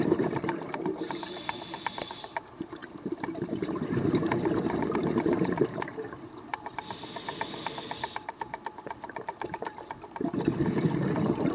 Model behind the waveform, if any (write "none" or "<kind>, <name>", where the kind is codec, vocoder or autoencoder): vocoder, BigVGAN v2